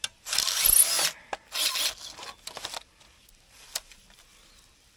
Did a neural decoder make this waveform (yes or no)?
no